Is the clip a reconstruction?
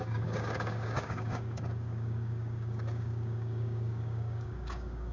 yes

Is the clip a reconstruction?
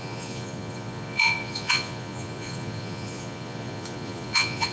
yes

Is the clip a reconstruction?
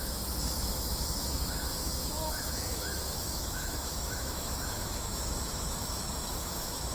yes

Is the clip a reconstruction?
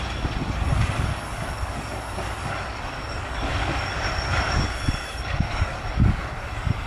yes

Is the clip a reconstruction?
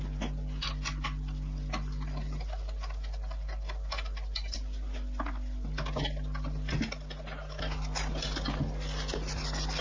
no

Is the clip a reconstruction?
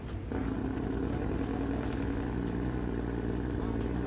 no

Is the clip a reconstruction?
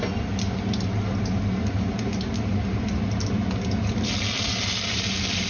no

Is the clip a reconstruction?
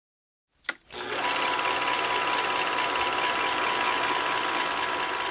no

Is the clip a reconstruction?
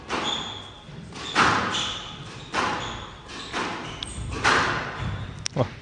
no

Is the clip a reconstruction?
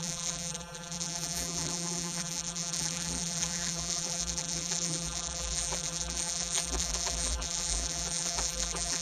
yes